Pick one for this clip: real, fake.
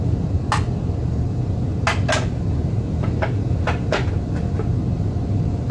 real